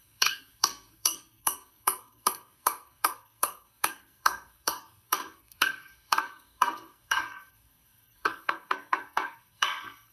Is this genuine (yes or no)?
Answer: no